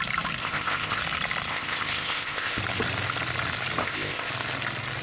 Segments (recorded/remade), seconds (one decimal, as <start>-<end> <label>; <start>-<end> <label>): 0.0-0.4 recorded; 0.4-1.0 remade; 1.0-1.5 recorded; 1.5-2.6 remade; 2.6-3.8 recorded; 3.8-4.3 remade; 4.3-5.0 recorded